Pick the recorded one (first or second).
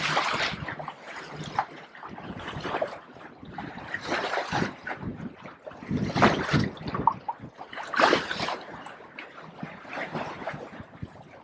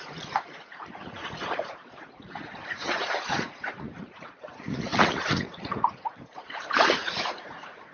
first